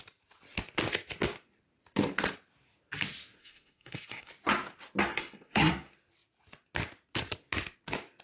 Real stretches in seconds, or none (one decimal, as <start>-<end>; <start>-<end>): 0.0-3.4; 4.3-5.1; 5.7-8.2